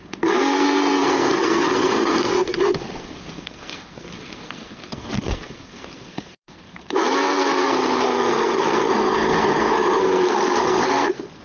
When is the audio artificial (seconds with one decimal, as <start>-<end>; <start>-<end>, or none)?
0.0-11.4